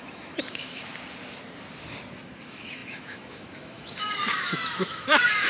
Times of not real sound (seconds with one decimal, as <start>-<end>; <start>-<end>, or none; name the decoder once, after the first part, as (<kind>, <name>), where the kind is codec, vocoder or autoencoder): 0.0-0.9 (autoencoder, DAC-VAE); 2.4-5.5

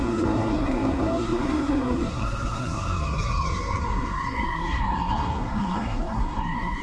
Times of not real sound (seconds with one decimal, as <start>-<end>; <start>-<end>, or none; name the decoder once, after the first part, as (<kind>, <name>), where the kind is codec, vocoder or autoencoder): 0.0-6.8 (codec, SNAC)

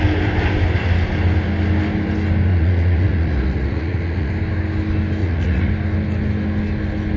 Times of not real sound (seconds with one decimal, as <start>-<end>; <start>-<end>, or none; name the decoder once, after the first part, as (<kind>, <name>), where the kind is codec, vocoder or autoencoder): 2.5-4.3 (vocoder, Vocos); 5.2-5.7

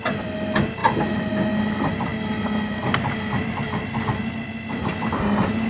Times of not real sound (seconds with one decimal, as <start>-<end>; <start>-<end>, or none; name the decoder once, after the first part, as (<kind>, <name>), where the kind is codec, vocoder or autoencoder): none

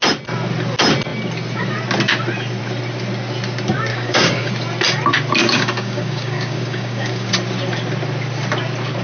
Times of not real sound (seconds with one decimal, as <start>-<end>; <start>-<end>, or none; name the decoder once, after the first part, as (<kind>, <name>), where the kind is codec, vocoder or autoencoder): 3.9-4.5 (codec, DAC); 5.4-7.3